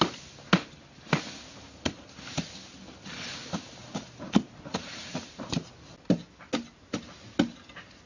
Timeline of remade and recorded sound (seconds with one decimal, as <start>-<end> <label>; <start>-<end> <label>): 0.0-3.8 recorded; 3.8-5.3 remade; 5.3-8.1 recorded